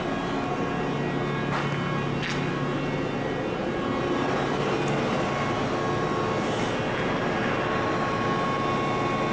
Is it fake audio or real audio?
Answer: real